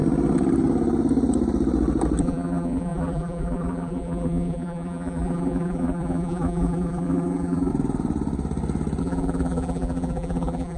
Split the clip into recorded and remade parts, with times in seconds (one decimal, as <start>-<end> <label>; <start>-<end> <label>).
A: 0.0-2.2 recorded; 2.2-7.7 remade; 7.7-9.0 recorded; 9.0-10.8 remade